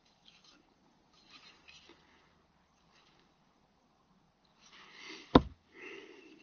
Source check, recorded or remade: recorded